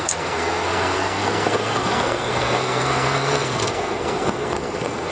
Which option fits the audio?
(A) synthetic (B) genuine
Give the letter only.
A